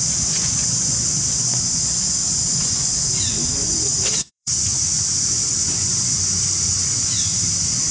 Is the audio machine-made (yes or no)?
yes